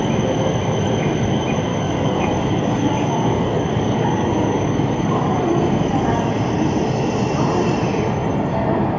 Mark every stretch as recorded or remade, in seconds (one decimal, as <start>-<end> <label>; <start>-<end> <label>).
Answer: 0.0-1.7 recorded; 1.7-6.3 remade; 6.3-9.0 recorded